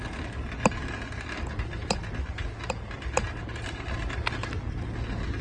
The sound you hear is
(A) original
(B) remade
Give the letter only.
A